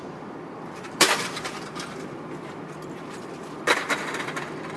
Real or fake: fake